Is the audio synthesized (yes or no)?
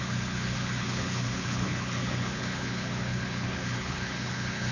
yes